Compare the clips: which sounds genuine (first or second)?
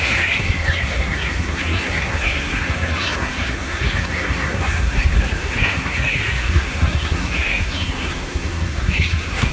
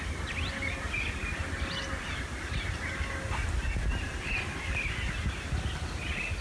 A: second